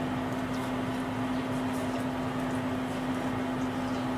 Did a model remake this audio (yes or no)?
no